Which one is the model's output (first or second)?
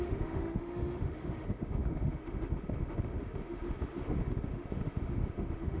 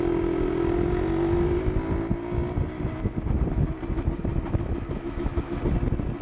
first